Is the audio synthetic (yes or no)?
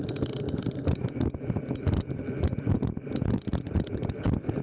yes